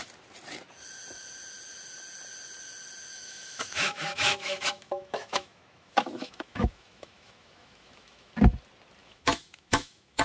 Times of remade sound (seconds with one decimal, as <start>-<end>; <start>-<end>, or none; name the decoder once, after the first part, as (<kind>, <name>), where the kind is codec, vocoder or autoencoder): 3.1-8.3 (autoencoder, DAC-VAE); 9.0-10.2